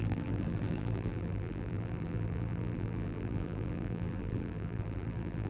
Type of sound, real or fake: fake